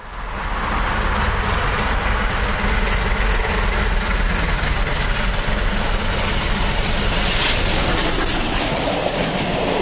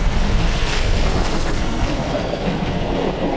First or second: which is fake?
second